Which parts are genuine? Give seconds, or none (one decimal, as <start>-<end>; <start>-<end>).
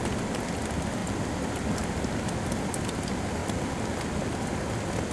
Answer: 0.0-5.1